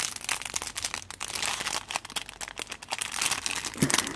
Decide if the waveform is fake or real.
real